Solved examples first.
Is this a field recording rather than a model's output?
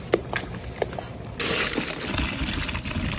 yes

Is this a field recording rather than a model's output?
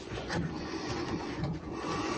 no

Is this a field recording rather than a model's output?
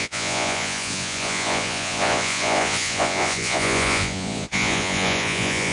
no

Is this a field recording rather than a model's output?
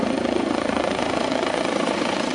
no